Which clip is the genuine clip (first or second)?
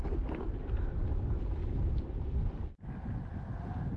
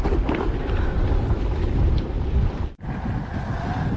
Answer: first